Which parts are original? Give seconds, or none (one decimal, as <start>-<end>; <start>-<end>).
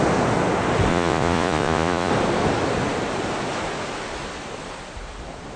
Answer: 0.0-0.9; 2.1-5.6